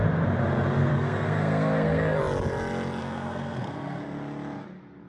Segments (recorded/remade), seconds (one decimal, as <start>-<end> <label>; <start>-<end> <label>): 0.0-0.9 recorded; 0.9-2.2 remade; 2.2-3.0 recorded; 3.0-4.0 remade; 4.0-5.1 recorded